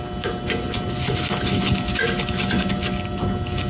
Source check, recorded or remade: recorded